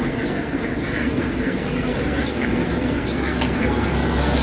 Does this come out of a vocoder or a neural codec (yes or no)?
yes